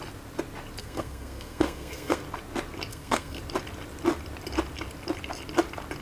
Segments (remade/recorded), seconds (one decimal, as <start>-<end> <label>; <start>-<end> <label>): 0.0-0.8 recorded; 0.8-2.2 remade; 2.2-2.9 recorded; 2.9-3.4 remade; 3.4-6.0 recorded